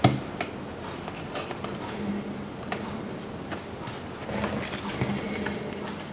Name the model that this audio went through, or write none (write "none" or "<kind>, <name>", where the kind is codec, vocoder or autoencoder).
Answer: none